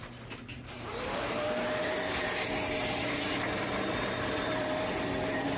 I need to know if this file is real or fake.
fake